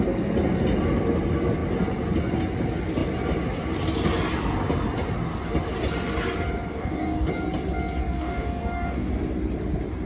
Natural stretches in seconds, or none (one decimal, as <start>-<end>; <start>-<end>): 0.0-6.7; 7.3-8.0; 9.1-10.1